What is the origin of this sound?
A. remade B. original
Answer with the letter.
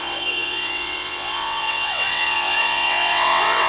A